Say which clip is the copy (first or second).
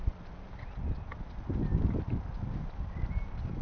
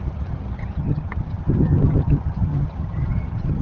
second